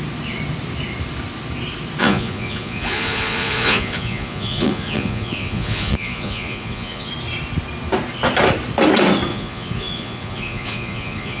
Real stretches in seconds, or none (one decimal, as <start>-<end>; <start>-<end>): 0.0-2.0; 7.1-9.3